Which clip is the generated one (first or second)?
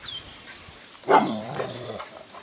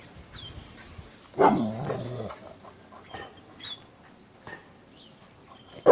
first